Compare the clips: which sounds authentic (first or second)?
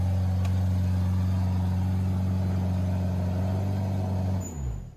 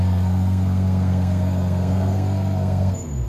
first